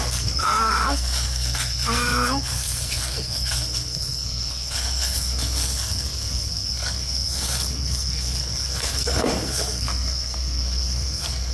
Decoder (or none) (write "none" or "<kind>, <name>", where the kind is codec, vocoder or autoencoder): codec, SNAC